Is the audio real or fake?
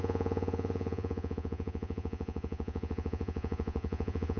fake